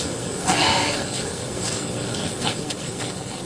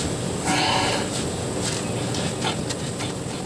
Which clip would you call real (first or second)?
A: second